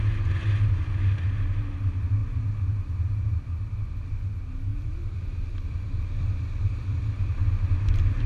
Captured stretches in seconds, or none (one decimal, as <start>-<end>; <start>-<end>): 0.0-4.7; 7.4-8.3